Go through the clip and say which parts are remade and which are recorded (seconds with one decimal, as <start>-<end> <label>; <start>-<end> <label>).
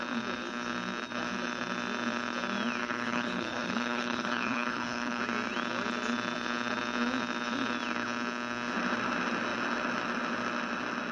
0.0-2.8 recorded; 2.8-5.2 remade; 5.2-11.1 recorded